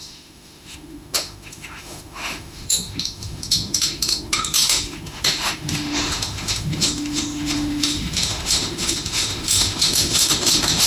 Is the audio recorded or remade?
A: remade